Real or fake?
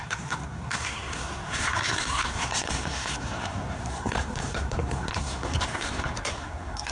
fake